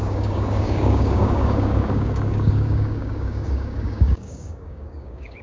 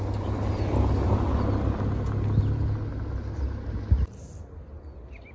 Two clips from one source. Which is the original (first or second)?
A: second